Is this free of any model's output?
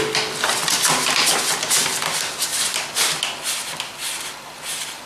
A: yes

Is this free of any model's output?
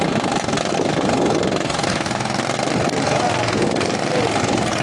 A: yes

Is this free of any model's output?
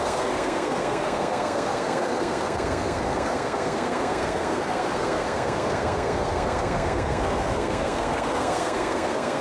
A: no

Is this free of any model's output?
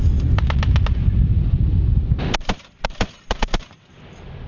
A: yes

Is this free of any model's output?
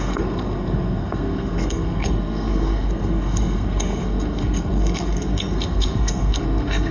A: no